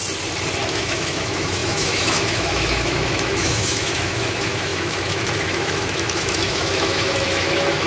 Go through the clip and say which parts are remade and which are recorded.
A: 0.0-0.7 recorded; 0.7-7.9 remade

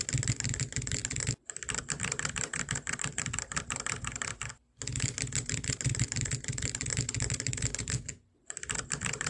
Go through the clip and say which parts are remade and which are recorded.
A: 0.0-9.3 recorded

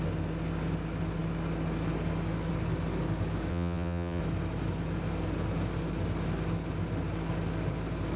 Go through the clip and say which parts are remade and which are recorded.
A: 0.0-3.5 recorded; 3.5-4.2 remade; 4.2-8.2 recorded

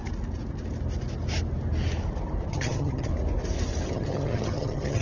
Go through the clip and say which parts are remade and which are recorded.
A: 0.0-2.5 recorded; 2.5-3.1 remade; 3.1-3.9 recorded; 3.9-5.0 remade

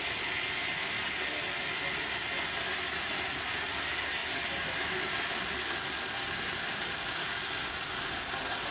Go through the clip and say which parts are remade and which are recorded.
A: 0.0-8.7 recorded